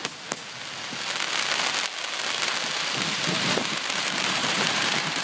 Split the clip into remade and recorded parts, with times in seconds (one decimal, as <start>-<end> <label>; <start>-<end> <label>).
0.0-3.1 recorded; 3.1-5.2 remade